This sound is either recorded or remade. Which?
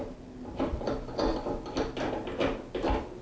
recorded